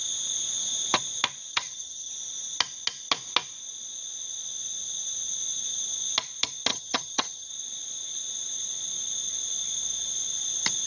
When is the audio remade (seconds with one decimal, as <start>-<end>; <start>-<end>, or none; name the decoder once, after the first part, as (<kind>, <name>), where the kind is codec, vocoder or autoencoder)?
1.5-2.1 (vocoder, HiFi-GAN); 6.7-7.5